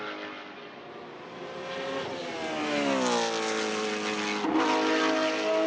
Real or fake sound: real